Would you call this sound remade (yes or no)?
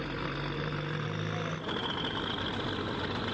no